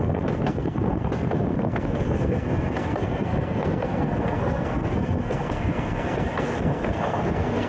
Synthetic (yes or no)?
yes